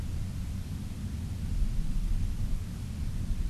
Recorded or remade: recorded